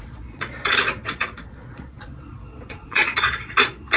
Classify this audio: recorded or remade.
remade